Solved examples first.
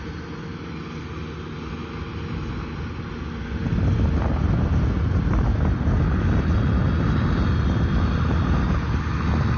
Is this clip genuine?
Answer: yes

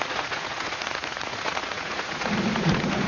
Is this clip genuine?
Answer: no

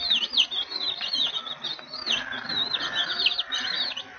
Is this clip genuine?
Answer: yes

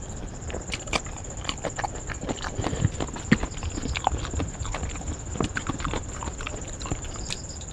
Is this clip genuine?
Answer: yes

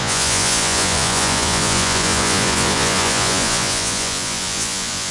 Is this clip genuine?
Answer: no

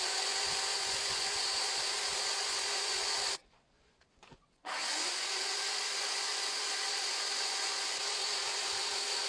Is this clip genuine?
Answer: no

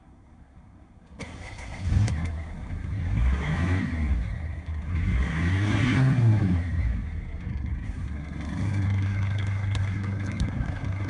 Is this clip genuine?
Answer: no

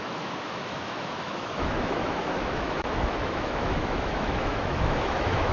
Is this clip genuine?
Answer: no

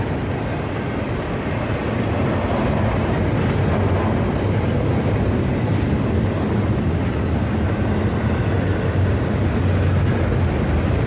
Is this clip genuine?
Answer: yes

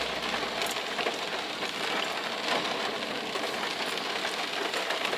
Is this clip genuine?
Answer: yes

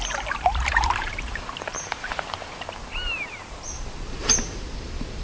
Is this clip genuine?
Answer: no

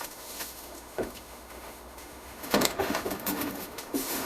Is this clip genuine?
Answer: no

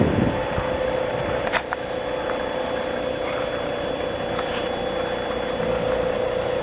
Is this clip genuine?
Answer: yes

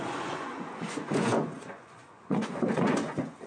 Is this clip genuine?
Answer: no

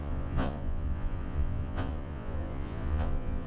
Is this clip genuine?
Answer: no